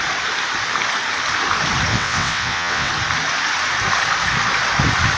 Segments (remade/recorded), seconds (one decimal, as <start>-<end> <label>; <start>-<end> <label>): 0.0-1.9 recorded; 1.9-2.9 remade; 2.9-5.2 recorded